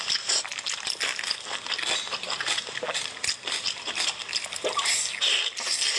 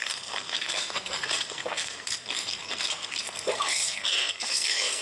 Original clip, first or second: first